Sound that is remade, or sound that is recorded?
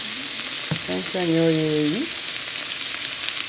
recorded